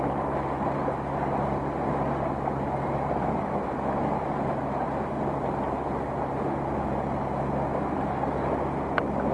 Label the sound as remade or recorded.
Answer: recorded